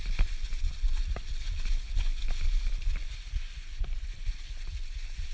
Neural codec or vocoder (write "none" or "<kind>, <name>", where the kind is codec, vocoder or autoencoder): none